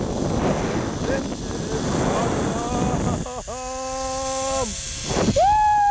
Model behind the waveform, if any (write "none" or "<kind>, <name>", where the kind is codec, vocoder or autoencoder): none